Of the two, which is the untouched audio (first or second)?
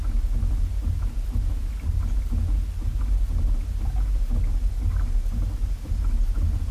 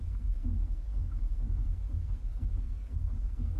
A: first